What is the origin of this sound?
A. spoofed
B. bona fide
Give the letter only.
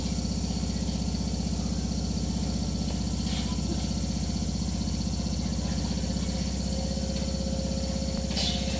B